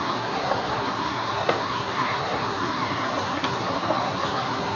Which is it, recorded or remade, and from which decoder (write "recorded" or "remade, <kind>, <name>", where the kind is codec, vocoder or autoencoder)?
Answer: remade, codec, SNAC